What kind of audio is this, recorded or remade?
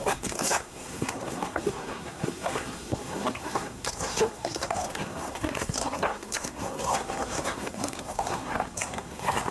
remade